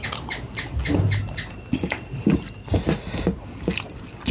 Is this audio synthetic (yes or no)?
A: no